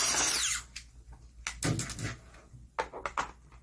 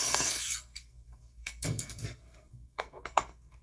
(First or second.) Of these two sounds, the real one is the first